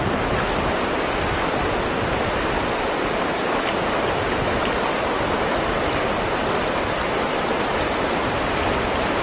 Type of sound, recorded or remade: recorded